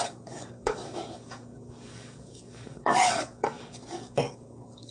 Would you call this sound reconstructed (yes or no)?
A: yes